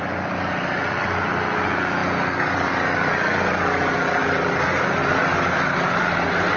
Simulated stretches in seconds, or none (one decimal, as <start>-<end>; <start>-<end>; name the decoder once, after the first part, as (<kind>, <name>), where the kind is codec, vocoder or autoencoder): none